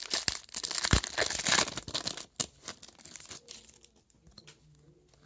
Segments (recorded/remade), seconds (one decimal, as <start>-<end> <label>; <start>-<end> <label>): 0.0-5.3 recorded